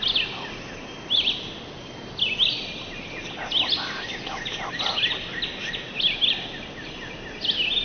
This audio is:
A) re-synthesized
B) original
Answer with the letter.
B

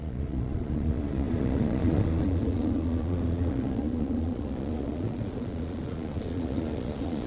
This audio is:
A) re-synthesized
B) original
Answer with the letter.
A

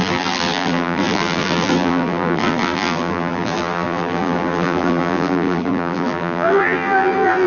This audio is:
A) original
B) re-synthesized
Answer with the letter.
B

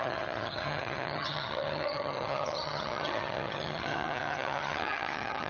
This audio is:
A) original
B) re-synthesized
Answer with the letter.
B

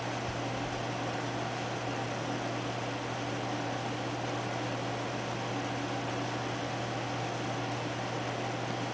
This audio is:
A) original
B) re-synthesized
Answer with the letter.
A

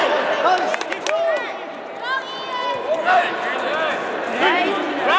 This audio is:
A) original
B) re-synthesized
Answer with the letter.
A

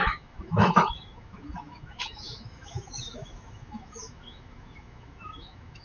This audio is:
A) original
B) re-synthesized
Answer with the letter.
B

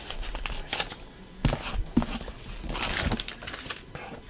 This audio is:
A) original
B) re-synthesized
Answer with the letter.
A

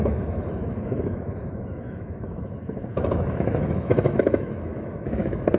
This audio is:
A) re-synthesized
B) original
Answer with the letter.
A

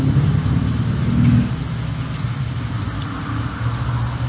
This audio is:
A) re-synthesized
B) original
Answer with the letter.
B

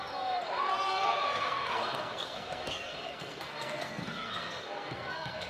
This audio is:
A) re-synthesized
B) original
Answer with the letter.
A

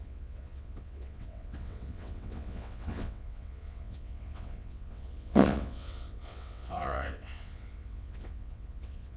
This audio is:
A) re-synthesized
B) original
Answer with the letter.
A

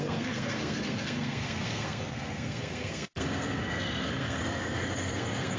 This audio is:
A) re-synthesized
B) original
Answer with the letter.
A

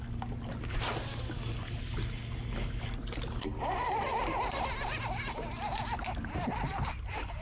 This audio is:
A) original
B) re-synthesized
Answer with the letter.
A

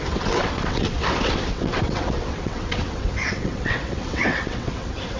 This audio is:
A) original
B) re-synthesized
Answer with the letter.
B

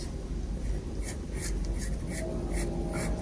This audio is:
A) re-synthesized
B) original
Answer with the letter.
B